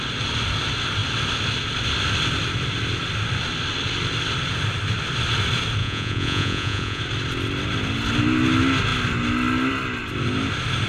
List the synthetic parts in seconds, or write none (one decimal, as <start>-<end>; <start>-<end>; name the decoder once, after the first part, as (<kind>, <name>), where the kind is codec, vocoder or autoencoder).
5.8-7.0 (vocoder, Vocos)